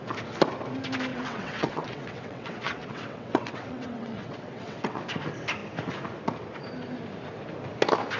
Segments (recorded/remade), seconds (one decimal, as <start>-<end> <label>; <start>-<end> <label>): 0.0-1.1 recorded; 1.1-5.0 remade; 5.0-8.2 recorded